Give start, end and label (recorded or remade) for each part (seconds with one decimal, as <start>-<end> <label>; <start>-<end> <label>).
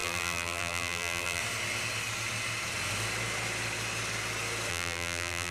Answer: 0.0-1.4 remade; 1.4-4.7 recorded; 4.7-5.5 remade